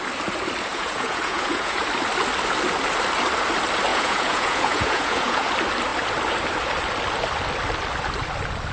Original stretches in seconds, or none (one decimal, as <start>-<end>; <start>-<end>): 0.0-0.7; 1.8-3.9; 5.5-8.7